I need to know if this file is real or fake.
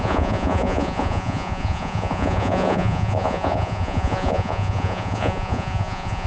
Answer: fake